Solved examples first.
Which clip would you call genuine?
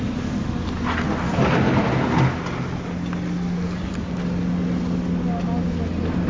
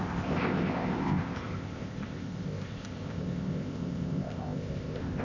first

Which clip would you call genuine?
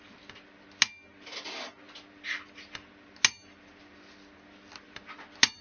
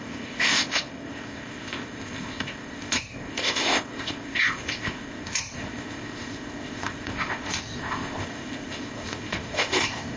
first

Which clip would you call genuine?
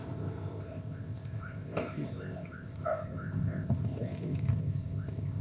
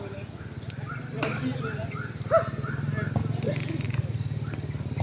second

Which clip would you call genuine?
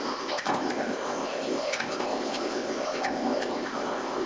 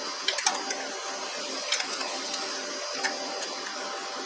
second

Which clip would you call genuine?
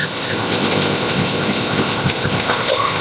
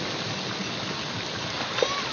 second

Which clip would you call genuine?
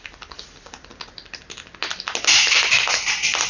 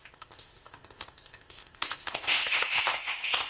first